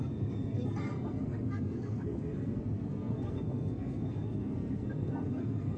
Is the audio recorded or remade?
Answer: remade